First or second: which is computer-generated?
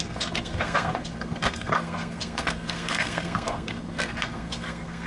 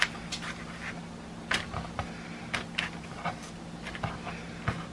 first